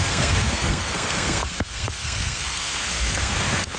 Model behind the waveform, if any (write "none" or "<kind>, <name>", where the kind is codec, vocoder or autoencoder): codec, SNAC